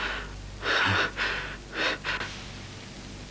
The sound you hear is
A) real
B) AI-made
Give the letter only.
A